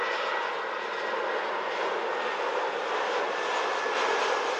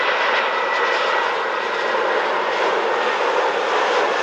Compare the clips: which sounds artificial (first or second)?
second